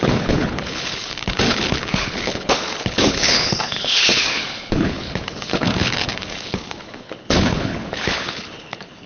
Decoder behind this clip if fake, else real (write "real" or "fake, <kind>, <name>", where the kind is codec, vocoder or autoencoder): fake, codec, HILCodec